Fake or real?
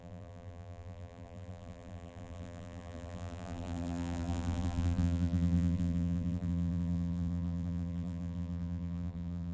fake